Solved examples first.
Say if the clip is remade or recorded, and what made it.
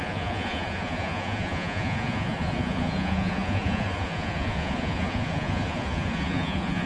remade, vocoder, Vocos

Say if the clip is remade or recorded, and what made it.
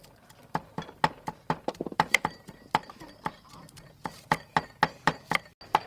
recorded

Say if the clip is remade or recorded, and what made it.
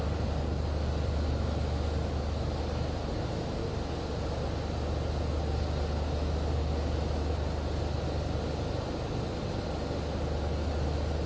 recorded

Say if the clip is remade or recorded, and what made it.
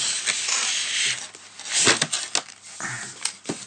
recorded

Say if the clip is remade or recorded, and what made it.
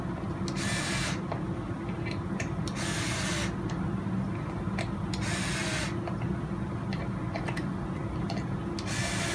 recorded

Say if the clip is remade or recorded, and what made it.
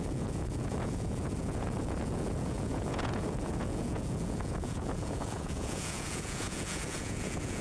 remade, vocoder, Vocos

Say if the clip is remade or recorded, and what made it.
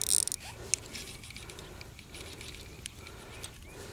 recorded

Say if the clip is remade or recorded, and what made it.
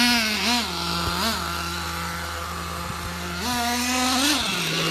recorded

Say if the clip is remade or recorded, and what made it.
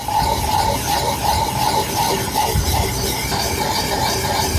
remade, vocoder, BigVGAN v2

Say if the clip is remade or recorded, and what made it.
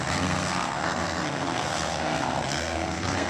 remade, codec, SNAC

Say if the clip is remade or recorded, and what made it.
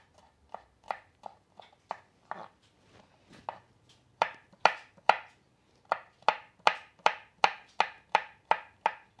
recorded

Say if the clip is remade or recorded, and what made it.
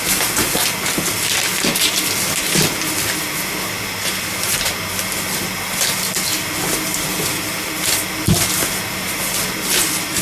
recorded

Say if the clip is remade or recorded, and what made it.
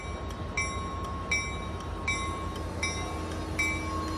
recorded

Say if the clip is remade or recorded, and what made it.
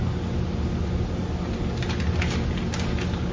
recorded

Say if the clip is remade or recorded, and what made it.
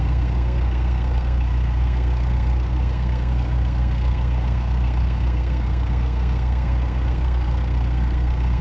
remade, codec, SNAC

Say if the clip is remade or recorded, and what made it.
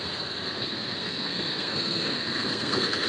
remade, codec, SNAC